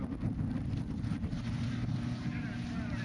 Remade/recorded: recorded